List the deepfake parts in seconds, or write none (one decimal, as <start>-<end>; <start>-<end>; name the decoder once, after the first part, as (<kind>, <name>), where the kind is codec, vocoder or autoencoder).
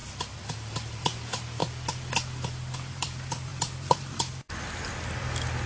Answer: 0.0-1.6 (vocoder, BigVGAN v2); 2.9-5.7